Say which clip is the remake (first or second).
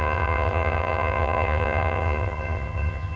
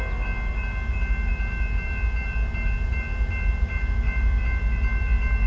first